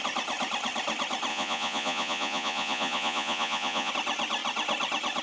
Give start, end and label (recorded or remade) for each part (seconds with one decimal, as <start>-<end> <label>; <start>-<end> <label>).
0.0-1.3 recorded; 1.3-3.9 remade; 3.9-5.2 recorded